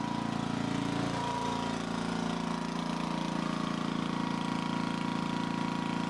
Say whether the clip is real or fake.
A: real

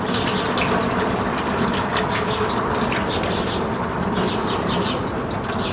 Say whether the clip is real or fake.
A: real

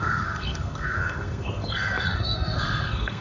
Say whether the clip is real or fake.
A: fake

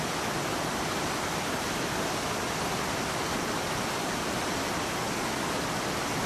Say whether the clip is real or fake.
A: real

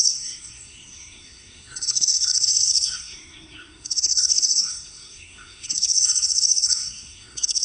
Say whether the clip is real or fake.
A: fake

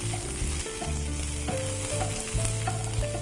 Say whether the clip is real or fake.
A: real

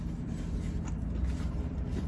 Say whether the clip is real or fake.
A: real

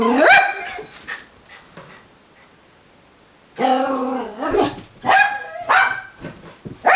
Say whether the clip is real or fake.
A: real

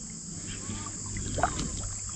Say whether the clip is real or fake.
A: real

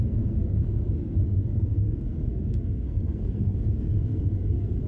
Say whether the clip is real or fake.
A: fake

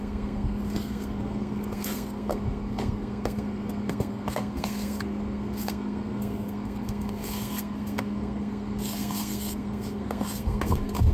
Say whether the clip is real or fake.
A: fake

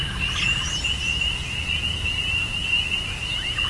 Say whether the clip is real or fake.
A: real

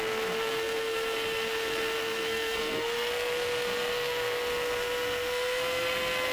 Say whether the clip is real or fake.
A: fake